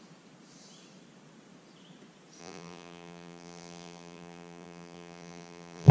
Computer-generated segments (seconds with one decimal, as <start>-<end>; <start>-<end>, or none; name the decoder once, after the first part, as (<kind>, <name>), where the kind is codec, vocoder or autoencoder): 2.4-5.9 (vocoder, BigVGAN v2)